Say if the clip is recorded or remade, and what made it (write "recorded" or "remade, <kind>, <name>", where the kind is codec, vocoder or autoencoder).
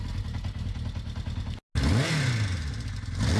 recorded